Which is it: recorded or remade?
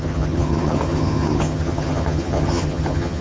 remade